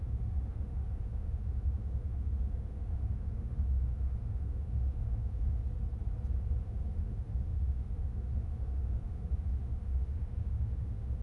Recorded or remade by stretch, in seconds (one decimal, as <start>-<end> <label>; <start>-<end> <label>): 0.0-5.6 remade; 5.6-6.6 recorded; 6.6-11.2 remade